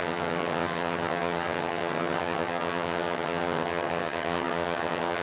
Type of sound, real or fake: fake